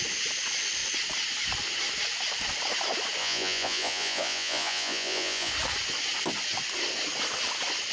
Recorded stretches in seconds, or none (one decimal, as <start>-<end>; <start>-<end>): 0.0-3.2; 5.5-7.9